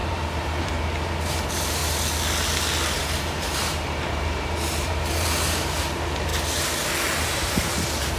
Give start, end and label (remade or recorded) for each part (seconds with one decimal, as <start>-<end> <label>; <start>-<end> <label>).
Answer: 0.0-1.8 remade; 1.8-2.9 recorded; 2.9-6.3 remade; 6.3-7.2 recorded; 7.2-8.2 remade